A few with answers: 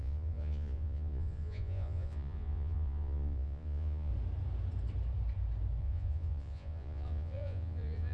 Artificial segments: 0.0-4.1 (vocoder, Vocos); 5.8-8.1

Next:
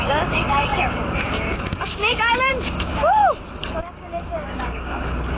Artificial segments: 0.0-3.2 (codec, DAC); 3.8-5.4

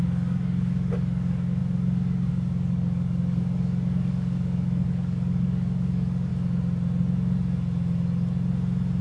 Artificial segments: 0.0-6.3 (codec, DAC)

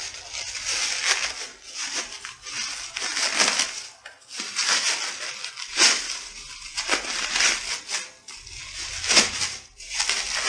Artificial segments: none

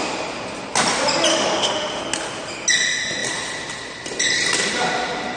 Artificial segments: 1.3-2.0 (autoencoder, DAC-VAE)